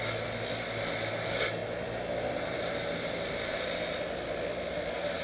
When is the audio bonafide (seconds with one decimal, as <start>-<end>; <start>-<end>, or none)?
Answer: 0.0-5.2